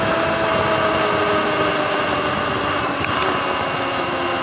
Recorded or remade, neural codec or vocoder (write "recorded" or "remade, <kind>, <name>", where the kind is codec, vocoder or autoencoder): recorded